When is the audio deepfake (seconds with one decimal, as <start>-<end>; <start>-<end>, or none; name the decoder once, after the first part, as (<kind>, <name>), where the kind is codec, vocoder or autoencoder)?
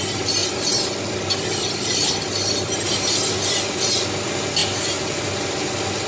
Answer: none